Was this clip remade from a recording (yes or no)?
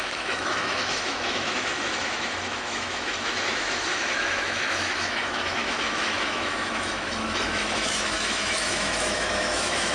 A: yes